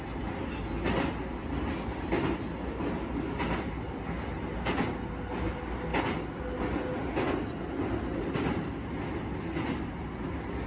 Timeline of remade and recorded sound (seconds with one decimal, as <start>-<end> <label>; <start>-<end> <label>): 0.0-10.7 recorded